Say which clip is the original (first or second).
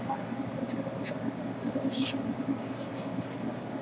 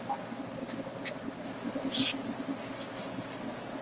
second